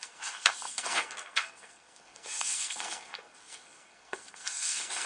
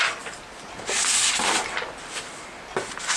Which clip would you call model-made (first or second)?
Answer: first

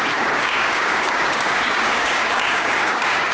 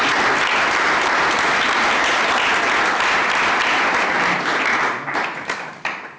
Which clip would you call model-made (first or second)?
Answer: first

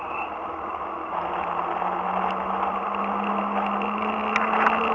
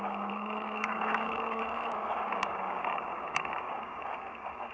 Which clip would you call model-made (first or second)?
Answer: second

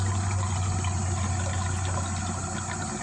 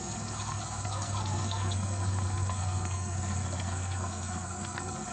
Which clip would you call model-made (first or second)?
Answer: second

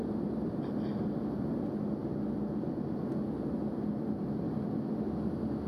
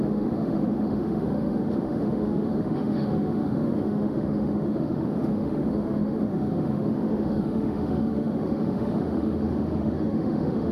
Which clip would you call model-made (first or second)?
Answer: second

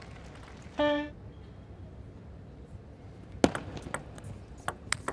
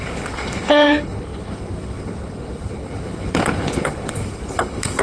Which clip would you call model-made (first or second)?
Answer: second